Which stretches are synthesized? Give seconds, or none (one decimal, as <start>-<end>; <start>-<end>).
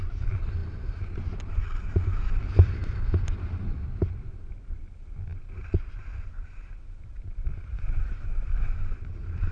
7.7-8.7